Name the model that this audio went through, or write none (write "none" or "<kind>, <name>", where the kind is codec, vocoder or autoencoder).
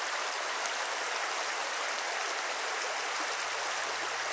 none